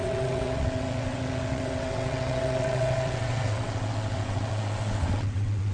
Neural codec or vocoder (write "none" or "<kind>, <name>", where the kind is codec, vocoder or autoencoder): vocoder, WaveNeXt